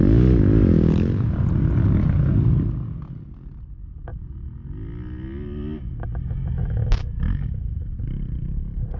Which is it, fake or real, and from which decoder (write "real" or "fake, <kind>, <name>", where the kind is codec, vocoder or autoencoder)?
real